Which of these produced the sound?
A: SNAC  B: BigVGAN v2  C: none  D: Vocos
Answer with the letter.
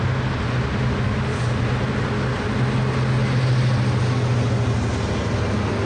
C